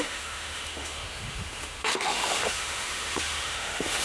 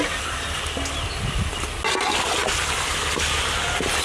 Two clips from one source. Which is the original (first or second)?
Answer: second